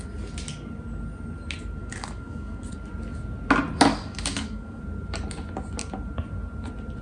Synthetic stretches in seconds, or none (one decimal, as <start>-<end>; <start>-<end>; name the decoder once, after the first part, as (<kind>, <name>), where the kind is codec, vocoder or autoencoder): 1.8-2.7 (codec, DAC); 3.9-4.8